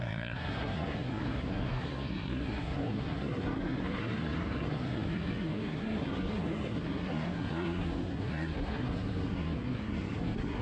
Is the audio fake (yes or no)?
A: yes